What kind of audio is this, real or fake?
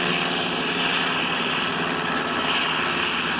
real